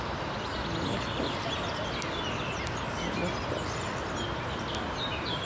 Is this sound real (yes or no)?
yes